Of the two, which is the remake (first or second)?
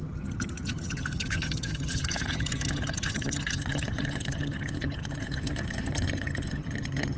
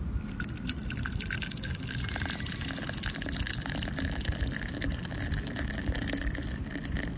first